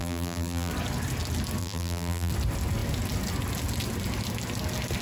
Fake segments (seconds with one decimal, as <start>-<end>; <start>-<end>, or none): 0.0-0.7; 1.6-2.3